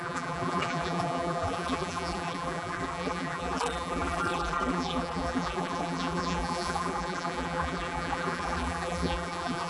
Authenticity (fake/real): fake